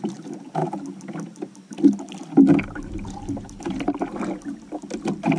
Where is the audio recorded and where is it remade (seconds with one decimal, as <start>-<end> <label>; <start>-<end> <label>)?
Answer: 0.0-5.4 recorded